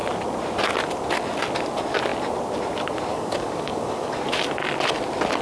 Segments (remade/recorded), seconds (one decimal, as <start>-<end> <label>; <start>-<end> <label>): 0.0-3.1 recorded; 3.1-4.2 remade; 4.2-5.4 recorded

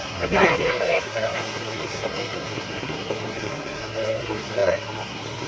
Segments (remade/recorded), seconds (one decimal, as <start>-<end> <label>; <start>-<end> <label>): 0.0-5.5 remade

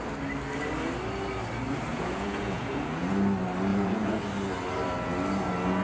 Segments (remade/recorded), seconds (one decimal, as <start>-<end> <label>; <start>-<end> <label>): 0.0-1.9 recorded; 1.9-3.1 remade; 3.1-3.7 recorded; 3.7-4.2 remade; 4.2-5.8 recorded

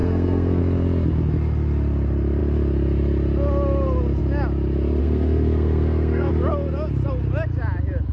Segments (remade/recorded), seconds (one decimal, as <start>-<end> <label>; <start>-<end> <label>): 0.0-0.6 remade; 0.6-5.0 recorded; 5.0-6.3 remade; 6.3-8.1 recorded

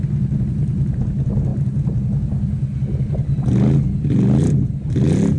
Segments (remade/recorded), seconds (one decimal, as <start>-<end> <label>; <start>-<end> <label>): 0.0-5.4 recorded

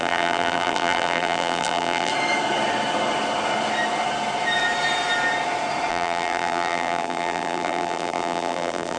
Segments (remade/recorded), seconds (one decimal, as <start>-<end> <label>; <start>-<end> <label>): 0.0-2.1 remade; 2.1-5.9 recorded; 5.9-9.0 remade